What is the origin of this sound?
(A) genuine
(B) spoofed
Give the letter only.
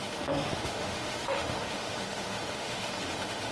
B